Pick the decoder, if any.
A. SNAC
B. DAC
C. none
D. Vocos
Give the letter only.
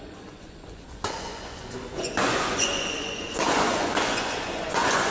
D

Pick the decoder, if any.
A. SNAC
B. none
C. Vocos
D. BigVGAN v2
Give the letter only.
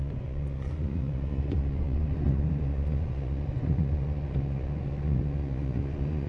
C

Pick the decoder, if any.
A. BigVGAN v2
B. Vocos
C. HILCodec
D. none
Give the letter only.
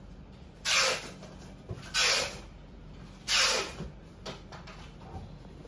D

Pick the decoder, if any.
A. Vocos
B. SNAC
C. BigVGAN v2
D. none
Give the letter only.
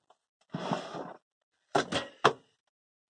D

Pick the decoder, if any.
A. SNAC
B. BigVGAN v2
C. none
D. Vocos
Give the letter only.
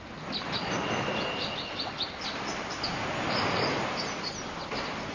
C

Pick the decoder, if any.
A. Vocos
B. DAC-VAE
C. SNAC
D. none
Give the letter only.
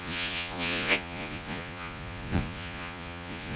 A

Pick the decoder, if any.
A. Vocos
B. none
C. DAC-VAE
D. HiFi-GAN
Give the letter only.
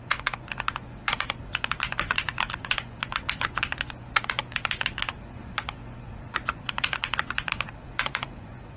A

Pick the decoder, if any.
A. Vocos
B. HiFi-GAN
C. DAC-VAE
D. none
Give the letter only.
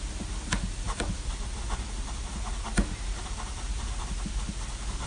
D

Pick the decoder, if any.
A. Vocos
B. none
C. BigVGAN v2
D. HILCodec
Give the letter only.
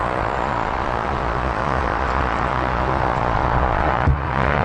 A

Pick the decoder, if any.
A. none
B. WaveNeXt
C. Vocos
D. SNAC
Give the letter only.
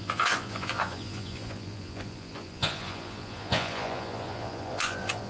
C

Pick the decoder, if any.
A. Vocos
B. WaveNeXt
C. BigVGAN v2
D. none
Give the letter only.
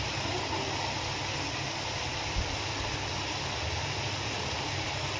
D